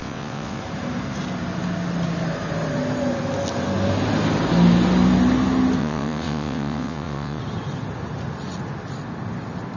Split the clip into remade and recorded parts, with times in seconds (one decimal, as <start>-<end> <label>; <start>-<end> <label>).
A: 0.0-0.6 remade; 0.6-5.8 recorded; 5.8-7.4 remade; 7.4-9.8 recorded